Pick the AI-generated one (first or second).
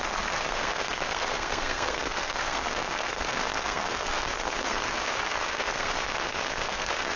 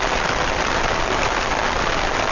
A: first